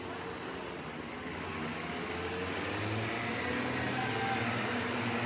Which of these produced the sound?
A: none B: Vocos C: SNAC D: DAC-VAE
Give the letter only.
A